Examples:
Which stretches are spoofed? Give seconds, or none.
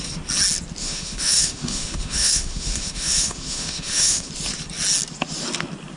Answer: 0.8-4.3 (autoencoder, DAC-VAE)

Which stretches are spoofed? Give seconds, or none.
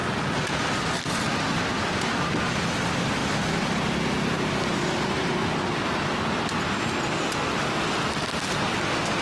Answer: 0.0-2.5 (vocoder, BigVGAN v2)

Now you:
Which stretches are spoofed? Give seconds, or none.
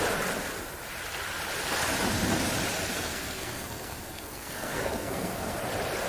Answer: 2.9-5.6 (codec, SNAC)